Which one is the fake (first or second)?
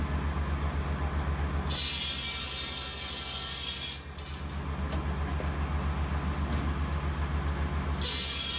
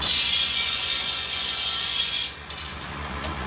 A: second